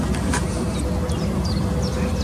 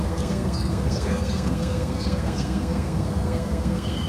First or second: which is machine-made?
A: second